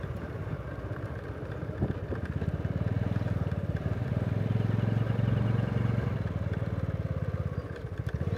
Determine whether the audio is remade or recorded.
recorded